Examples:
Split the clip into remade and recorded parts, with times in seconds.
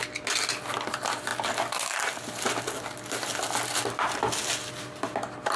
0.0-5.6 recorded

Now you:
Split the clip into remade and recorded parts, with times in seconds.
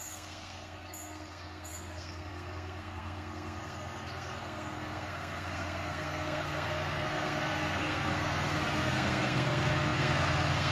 0.0-10.7 remade